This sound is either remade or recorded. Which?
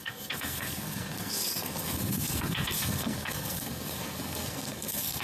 remade